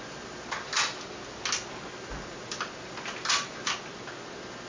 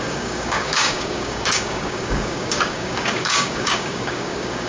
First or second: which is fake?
second